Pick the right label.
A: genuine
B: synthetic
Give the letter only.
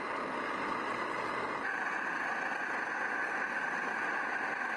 A